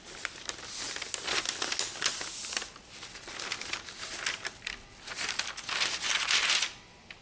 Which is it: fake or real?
real